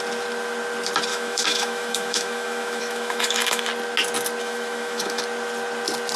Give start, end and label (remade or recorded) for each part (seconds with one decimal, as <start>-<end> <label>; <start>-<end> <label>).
0.0-1.1 recorded; 1.1-3.7 remade; 3.7-4.4 recorded; 4.4-5.2 remade; 5.2-6.2 recorded